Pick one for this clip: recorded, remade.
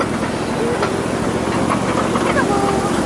recorded